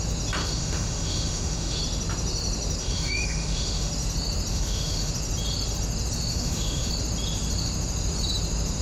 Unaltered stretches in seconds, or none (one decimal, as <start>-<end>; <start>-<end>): 0.0-0.4; 1.8-2.8; 3.9-4.5; 5.1-6.3; 6.9-8.8